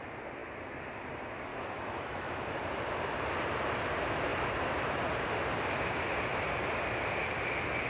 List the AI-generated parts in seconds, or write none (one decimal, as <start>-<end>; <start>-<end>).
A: 1.5-2.6